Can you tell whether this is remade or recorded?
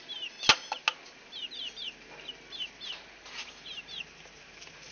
recorded